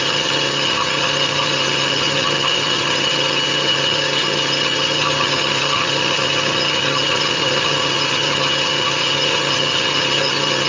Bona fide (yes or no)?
no